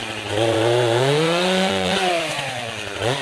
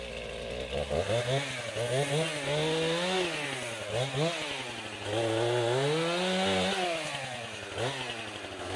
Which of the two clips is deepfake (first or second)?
first